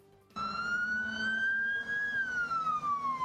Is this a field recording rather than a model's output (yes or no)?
no